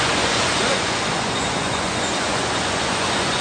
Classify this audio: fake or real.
fake